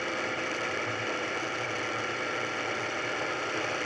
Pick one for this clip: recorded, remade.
remade